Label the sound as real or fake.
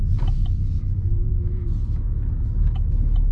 real